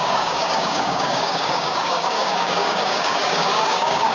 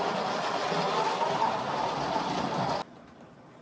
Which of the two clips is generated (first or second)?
first